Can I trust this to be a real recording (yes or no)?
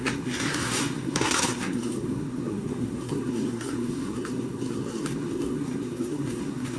no